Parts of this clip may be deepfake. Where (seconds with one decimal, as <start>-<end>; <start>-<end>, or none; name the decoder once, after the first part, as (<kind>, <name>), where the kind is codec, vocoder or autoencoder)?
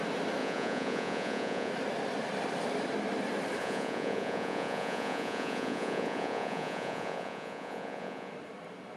0.4-1.7 (vocoder, Vocos); 3.6-8.3